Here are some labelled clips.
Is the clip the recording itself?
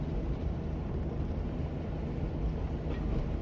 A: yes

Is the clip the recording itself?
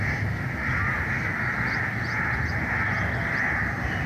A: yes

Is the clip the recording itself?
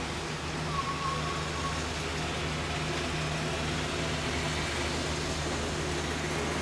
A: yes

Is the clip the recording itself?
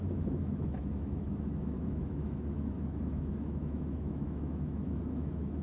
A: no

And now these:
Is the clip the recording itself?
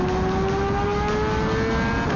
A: yes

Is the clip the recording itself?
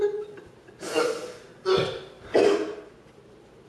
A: yes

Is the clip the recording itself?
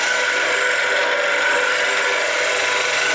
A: yes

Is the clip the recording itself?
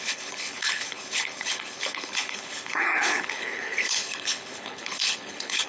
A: no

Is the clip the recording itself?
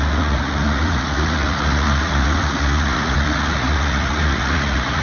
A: no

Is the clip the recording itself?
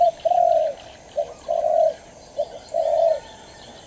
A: no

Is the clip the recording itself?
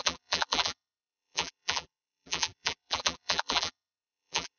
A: no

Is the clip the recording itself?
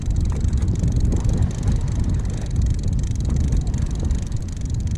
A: yes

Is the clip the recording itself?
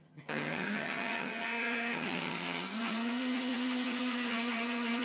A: no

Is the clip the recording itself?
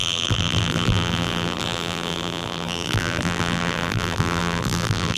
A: no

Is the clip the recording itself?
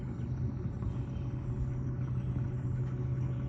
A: yes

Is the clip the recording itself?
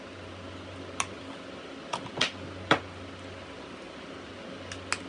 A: yes